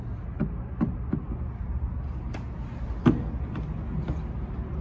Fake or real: real